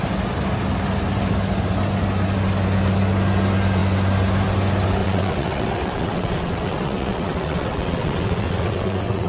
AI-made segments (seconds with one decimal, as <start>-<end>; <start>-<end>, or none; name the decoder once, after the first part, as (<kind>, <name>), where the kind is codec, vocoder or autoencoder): 5.0-9.3 (vocoder, WaveNeXt)